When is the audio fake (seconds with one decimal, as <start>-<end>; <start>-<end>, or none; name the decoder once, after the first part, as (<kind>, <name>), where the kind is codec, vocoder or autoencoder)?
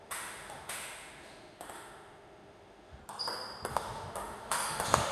0.0-3.0 (autoencoder, DAC-VAE); 3.7-5.1